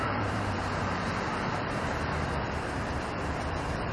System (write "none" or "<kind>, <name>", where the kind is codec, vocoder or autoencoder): vocoder, BigVGAN v2